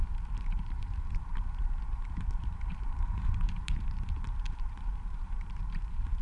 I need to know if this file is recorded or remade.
remade